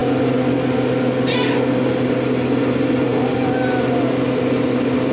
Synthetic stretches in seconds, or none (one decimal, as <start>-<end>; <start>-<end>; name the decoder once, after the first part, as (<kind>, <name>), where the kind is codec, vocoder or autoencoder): none